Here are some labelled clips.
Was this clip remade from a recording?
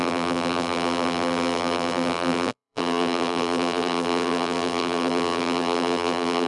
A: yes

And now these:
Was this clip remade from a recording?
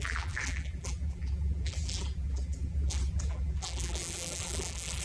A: yes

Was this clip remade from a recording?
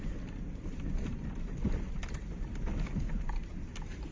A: yes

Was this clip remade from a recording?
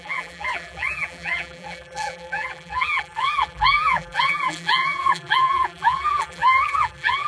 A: yes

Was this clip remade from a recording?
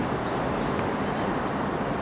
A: no